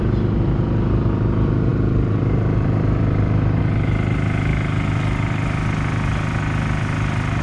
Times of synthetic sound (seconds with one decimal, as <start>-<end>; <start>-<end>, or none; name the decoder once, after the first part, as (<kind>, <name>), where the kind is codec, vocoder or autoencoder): none

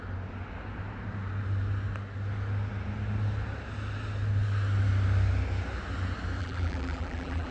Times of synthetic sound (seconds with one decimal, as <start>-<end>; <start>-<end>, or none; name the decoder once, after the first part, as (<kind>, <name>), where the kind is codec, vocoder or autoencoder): 6.4-7.5 (vocoder, BigVGAN v2)

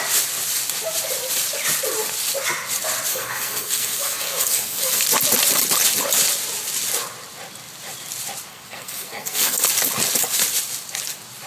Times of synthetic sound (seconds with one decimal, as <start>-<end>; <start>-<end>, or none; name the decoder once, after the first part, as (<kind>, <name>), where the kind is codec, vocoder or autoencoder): 3.1-5.0 (codec, SNAC); 8.5-9.6

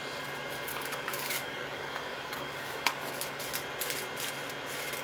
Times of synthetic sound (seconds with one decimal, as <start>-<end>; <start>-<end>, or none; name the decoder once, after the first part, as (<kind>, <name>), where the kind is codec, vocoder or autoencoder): 0.7-3.4 (codec, DAC)